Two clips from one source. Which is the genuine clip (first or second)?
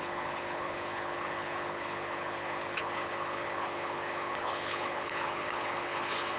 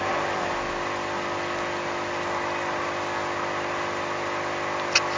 second